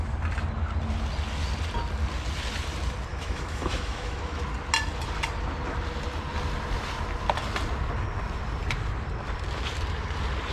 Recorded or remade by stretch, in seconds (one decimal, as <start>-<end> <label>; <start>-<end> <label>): 0.0-3.1 recorded; 3.1-4.4 remade; 4.4-10.5 recorded